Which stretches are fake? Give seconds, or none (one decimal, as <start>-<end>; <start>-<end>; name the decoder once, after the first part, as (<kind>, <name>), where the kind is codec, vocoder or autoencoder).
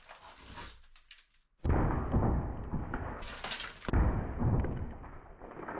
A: none